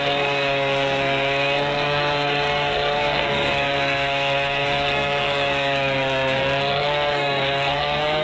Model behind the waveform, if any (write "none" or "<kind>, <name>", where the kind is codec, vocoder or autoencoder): codec, SNAC